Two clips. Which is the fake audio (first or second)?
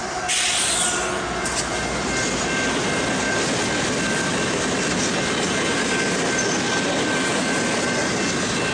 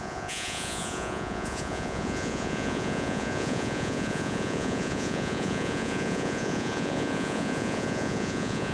second